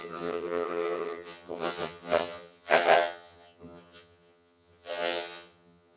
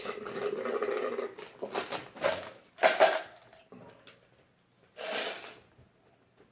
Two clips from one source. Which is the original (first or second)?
second